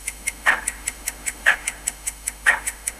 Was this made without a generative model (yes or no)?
no